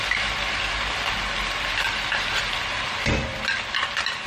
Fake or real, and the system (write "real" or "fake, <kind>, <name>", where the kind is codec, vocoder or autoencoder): real